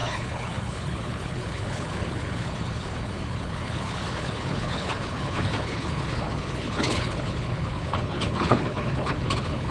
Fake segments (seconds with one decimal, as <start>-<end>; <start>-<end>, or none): 0.0-9.7